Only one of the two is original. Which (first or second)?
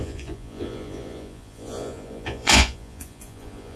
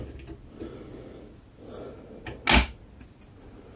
second